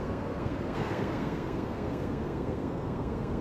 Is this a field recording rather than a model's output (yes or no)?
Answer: no